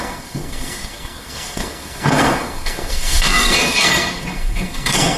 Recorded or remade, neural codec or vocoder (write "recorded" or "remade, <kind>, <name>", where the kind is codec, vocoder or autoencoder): remade, codec, SNAC